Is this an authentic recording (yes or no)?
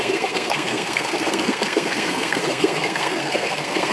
no